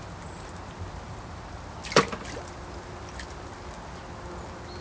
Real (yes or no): yes